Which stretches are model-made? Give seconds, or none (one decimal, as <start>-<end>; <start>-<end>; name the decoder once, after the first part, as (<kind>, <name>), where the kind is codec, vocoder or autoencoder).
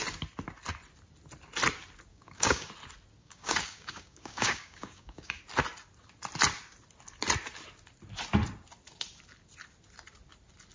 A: 2.1-2.7 (codec, DAC); 3.2-5.4